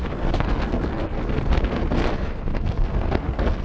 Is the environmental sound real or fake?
fake